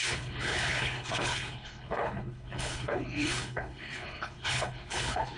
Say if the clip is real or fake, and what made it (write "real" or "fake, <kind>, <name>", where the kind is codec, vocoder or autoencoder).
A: fake, codec, HILCodec